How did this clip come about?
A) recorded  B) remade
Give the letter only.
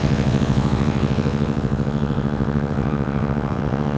B